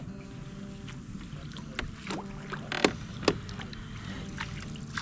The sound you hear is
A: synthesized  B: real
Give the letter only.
B